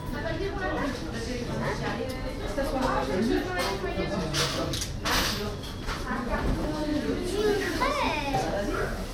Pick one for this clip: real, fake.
real